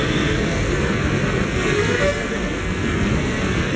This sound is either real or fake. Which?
fake